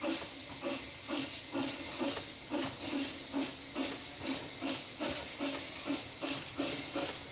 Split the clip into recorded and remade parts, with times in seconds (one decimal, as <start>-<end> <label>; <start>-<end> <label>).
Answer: 0.0-7.3 recorded